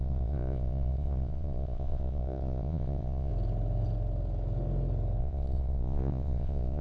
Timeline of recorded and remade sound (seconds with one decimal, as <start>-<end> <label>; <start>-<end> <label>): 0.0-3.3 remade; 3.3-5.2 recorded; 5.2-6.8 remade